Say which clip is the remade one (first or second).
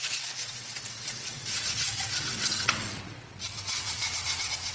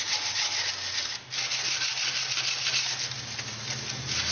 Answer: first